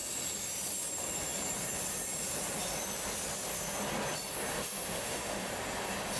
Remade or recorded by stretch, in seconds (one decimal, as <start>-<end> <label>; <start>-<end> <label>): 0.0-4.5 recorded; 4.5-5.5 remade; 5.5-6.2 recorded